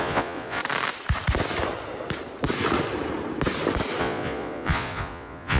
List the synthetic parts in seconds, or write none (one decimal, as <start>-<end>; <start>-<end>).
0.0-0.6; 4.0-5.6